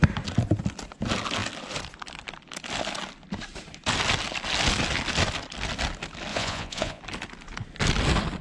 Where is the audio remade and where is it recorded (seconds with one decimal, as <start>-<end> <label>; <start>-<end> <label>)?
0.0-6.3 recorded; 6.3-7.0 remade; 7.0-8.4 recorded